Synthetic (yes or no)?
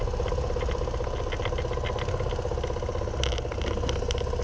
no